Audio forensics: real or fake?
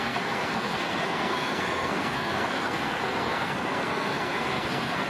fake